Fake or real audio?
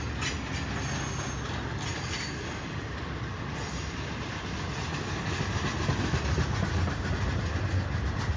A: real